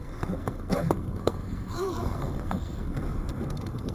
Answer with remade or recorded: remade